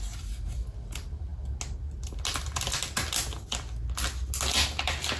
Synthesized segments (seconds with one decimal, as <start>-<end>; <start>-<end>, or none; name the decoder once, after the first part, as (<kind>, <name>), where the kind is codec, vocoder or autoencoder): none